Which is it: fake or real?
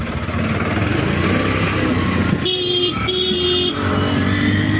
real